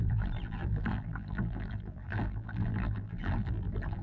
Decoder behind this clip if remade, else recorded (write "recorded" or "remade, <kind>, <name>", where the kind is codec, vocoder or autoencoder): remade, vocoder, BigVGAN v2